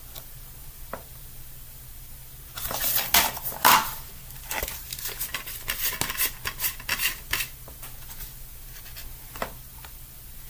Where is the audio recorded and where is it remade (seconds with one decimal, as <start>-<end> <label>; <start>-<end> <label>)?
0.0-10.5 recorded